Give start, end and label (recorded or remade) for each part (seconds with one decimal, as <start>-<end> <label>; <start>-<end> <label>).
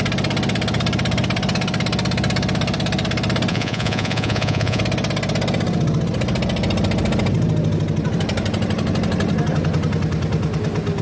0.0-3.5 recorded; 3.5-4.8 remade; 4.8-11.0 recorded